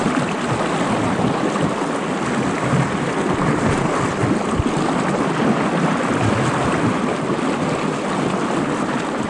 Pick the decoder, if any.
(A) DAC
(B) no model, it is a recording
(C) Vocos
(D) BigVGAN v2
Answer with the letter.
B